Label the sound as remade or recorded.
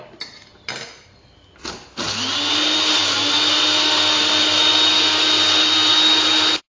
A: recorded